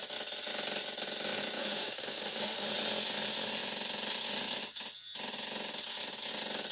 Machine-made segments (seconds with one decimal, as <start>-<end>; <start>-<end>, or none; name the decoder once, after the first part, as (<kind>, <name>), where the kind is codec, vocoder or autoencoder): 1.6-2.7 (autoencoder, DAC-VAE)